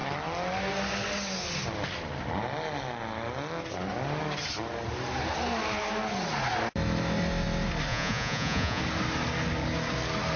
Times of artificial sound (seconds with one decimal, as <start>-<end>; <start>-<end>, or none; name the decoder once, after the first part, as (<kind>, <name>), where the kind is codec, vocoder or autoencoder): 7.9-8.8 (vocoder, Vocos)